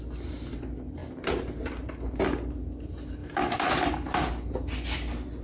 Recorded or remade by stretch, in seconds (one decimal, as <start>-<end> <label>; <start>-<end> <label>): 0.0-3.2 recorded; 3.2-4.2 remade; 4.2-5.4 recorded